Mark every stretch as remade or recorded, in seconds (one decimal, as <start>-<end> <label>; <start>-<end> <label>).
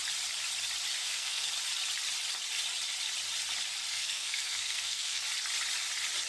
0.0-1.0 recorded; 1.0-1.5 remade; 1.5-3.9 recorded; 3.9-5.2 remade; 5.2-6.3 recorded